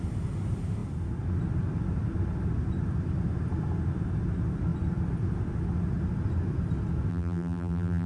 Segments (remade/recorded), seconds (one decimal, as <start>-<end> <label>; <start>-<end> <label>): 0.0-7.1 recorded; 7.1-8.1 remade